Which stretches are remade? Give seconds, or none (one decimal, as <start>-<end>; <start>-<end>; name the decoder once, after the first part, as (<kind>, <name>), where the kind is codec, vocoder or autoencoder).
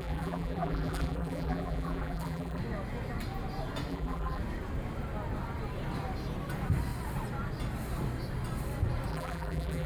0.0-2.6 (vocoder, BigVGAN v2); 3.9-4.4; 9.1-9.9